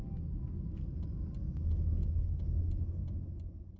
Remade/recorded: recorded